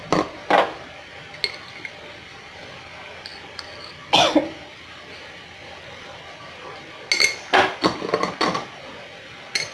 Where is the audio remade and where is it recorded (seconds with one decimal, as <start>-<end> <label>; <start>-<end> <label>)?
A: 0.0-9.7 recorded